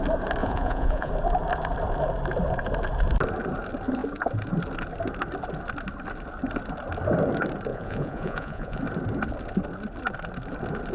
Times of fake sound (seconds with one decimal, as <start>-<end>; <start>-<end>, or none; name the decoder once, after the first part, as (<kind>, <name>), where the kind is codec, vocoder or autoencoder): 0.4-1.1 (vocoder, Vocos); 7.7-8.8